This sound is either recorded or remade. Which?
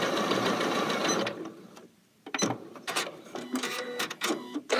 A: remade